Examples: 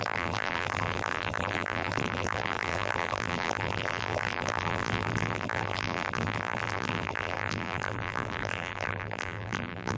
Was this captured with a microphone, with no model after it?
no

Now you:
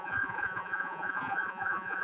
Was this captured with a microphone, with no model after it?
no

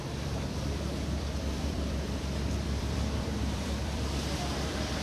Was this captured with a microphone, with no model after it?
no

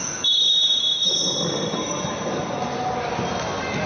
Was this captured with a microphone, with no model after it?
yes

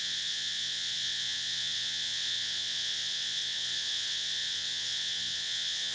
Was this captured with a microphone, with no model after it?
no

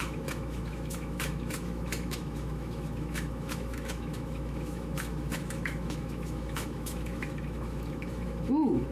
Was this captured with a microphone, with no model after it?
no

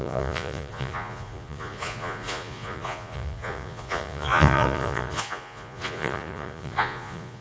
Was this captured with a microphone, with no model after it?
no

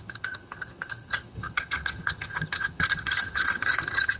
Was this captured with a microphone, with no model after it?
no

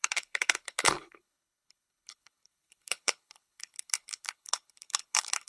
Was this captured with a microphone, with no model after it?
no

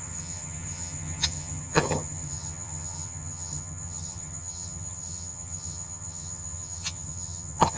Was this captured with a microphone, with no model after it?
no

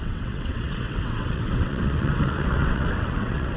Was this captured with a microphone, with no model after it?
no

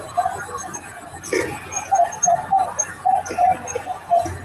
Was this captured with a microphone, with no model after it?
yes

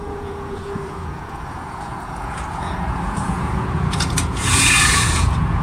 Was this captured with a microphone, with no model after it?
no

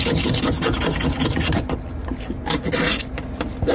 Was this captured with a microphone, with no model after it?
yes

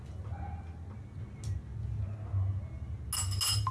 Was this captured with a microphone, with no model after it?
yes